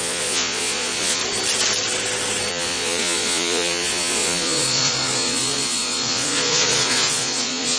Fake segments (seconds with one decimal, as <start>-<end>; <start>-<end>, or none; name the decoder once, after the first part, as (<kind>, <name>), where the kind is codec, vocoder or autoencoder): 0.0-1.2 (vocoder, Vocos); 2.5-7.8